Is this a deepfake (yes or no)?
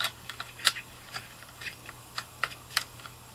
yes